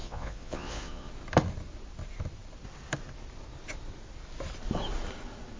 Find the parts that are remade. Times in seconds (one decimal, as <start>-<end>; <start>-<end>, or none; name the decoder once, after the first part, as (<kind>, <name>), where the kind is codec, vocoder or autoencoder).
0.0-1.1 (vocoder, Vocos)